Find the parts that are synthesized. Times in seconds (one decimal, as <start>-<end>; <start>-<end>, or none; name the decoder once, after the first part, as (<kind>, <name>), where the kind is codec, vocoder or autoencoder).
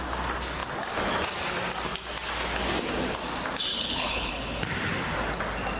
3.7-4.3 (codec, HILCodec)